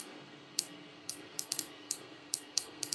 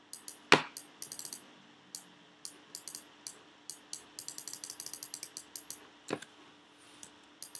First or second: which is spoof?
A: first